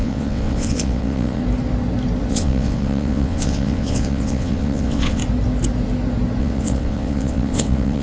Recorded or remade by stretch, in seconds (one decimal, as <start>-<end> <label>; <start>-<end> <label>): 0.0-1.4 remade; 1.4-2.3 recorded; 2.3-5.2 remade; 5.2-6.4 recorded; 6.4-8.0 remade